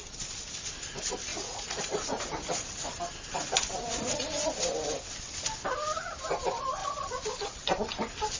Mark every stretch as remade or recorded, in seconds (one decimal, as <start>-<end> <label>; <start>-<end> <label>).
0.0-1.3 recorded; 1.3-2.2 remade; 2.2-8.4 recorded